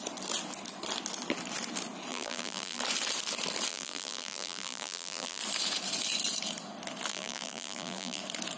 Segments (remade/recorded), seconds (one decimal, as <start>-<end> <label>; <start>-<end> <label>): 0.0-2.1 recorded; 2.1-2.8 remade; 2.8-3.7 recorded; 3.7-5.4 remade; 5.4-7.1 recorded; 7.1-8.2 remade; 8.2-8.6 recorded